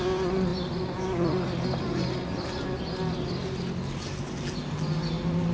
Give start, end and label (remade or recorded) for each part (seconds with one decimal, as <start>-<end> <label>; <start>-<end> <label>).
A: 0.0-5.5 recorded